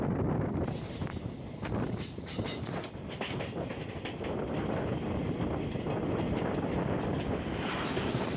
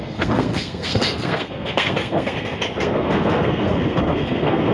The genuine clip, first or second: first